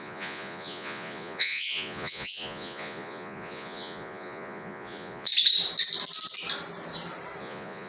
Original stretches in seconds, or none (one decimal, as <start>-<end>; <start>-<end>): 5.3-7.4